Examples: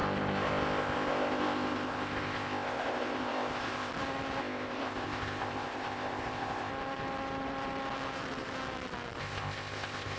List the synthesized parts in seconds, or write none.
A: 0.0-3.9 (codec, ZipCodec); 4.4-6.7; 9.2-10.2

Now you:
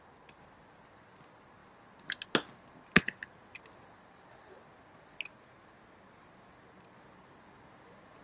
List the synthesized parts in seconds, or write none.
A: none

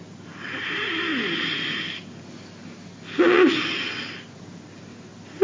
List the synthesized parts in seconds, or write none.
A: none

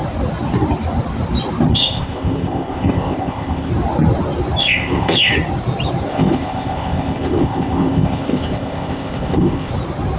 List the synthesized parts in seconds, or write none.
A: 1.7-3.7 (codec, ZipCodec); 4.6-5.3; 6.1-9.7

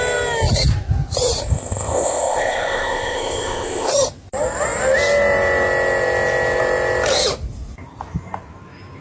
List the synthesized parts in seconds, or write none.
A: 1.5-3.9 (codec, ZipCodec)

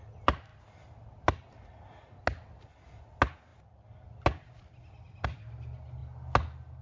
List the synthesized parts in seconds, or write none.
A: none

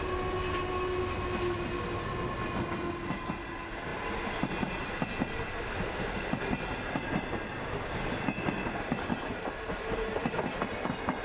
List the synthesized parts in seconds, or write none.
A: none

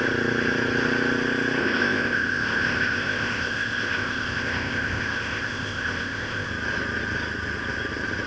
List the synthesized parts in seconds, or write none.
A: 1.6-6.5 (codec, ZipCodec)